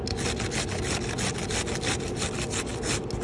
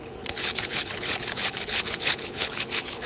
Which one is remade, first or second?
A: second